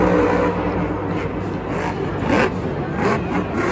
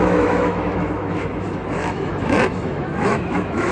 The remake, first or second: second